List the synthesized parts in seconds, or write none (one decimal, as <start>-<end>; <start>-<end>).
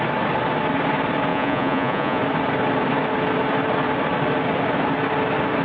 1.3-2.2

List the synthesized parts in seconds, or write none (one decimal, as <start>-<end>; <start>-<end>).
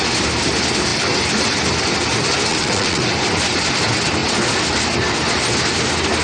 2.5-3.0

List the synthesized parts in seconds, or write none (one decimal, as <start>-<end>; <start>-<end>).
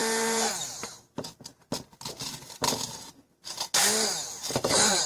0.0-1.5; 4.6-5.1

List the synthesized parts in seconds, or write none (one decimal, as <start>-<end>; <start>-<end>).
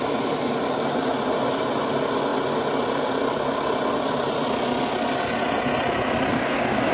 6.3-6.9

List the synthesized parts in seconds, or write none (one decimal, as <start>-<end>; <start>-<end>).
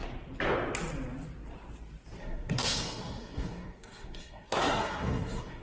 2.2-5.6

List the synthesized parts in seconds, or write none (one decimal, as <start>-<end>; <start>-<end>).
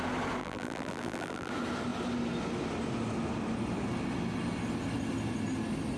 0.4-1.5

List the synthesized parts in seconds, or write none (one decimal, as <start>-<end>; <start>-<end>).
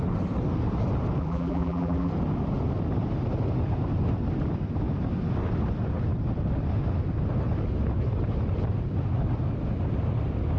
1.2-2.1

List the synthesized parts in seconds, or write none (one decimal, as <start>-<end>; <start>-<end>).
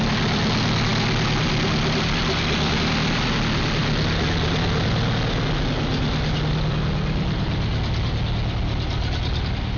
none